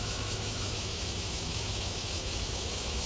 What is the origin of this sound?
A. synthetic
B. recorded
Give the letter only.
A